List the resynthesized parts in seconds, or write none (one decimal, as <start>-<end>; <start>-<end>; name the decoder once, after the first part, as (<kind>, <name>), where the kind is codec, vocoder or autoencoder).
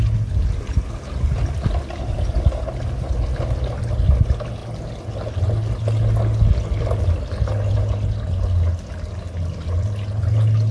none